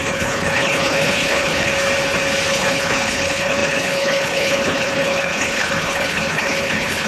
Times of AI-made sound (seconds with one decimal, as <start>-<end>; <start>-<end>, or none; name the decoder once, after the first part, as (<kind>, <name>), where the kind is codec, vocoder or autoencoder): 0.0-1.7 (codec, HILCodec); 2.5-7.1